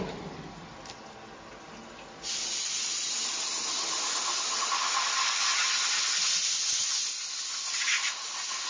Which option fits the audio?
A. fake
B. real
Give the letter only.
B